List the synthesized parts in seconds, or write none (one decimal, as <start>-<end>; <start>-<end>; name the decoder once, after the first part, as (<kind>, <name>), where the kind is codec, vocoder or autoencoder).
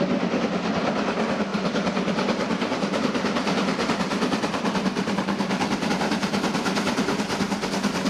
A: 1.5-5.9 (vocoder, BigVGAN v2)